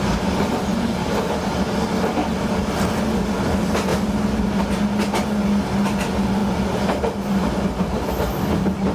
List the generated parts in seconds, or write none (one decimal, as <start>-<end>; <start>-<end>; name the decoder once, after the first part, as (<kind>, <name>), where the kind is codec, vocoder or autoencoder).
none